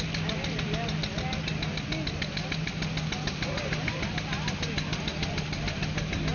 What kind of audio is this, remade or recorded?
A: recorded